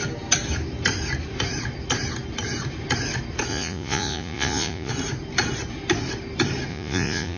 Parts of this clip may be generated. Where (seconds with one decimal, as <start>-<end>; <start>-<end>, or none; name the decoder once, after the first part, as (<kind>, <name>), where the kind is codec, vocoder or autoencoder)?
3.5-4.9 (vocoder, Vocos); 6.7-7.4